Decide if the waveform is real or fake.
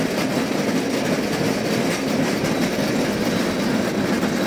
real